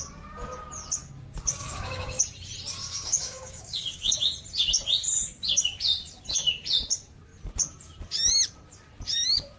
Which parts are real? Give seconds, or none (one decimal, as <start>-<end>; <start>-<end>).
0.0-1.6; 2.2-2.8; 4.2-9.6

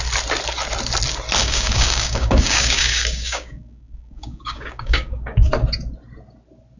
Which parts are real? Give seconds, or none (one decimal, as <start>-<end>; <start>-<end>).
0.0-1.4; 5.5-6.8

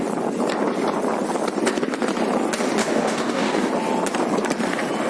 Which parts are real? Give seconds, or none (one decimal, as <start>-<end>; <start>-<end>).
0.0-2.8; 3.7-5.1

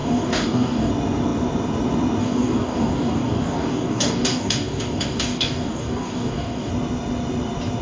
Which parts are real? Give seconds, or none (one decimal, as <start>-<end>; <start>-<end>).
0.9-2.2; 6.7-7.8

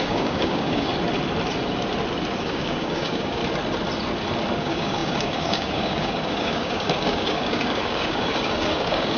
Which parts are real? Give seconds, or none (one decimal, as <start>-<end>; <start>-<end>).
0.9-2.4; 3.4-4.6

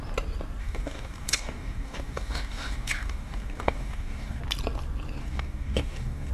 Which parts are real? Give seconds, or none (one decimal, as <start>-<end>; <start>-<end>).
0.0-0.6; 4.4-5.2

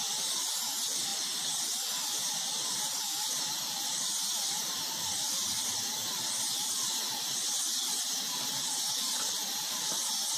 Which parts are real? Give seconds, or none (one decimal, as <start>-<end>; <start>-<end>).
0.0-10.4